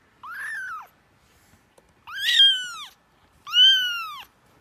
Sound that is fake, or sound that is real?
real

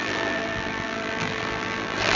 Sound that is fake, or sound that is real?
fake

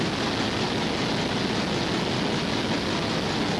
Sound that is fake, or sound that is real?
real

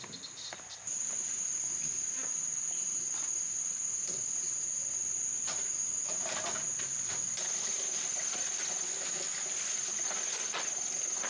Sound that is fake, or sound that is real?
real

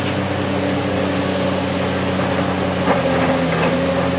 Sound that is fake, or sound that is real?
real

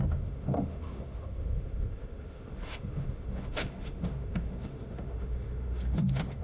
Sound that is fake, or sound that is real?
fake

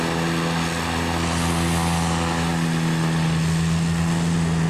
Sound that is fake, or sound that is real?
real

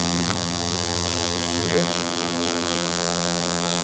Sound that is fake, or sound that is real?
fake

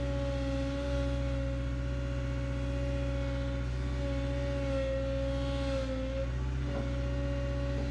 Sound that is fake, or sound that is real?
real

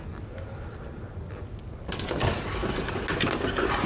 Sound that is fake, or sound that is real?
real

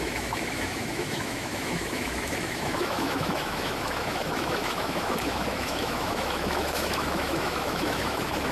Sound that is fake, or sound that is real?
fake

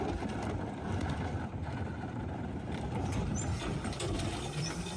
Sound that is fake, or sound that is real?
fake